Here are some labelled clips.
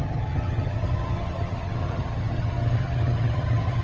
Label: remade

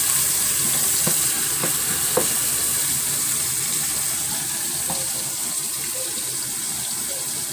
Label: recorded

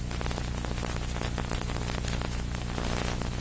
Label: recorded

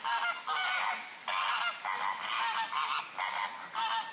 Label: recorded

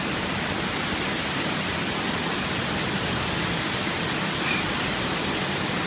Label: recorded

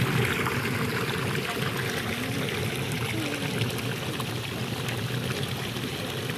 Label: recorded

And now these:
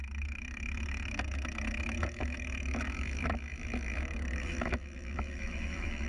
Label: remade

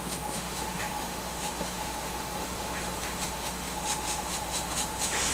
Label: remade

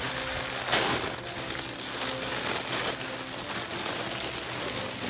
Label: recorded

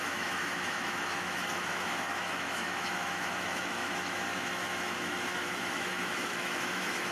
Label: remade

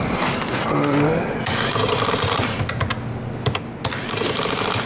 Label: recorded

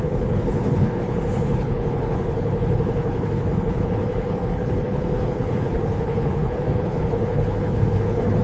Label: remade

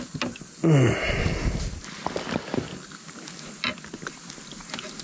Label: recorded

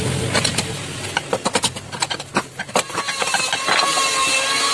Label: recorded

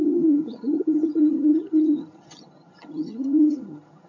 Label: remade